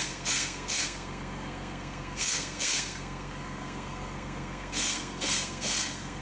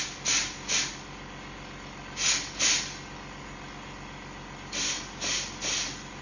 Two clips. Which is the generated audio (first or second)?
first